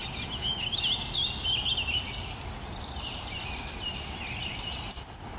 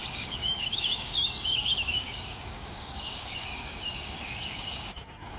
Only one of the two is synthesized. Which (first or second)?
second